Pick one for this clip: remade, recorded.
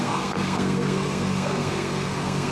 remade